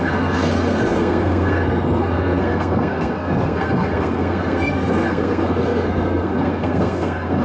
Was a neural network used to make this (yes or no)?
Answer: yes